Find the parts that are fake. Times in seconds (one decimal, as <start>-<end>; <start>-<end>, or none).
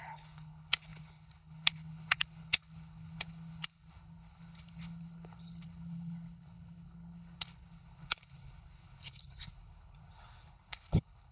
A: 0.0-11.3